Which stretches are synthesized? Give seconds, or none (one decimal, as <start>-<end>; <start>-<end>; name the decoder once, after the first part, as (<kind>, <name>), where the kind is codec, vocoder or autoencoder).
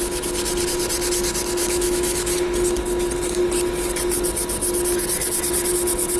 1.6-2.2 (autoencoder, DAC-VAE)